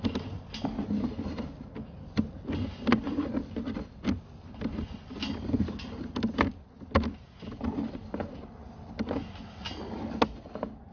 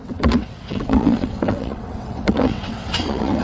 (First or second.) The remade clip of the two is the second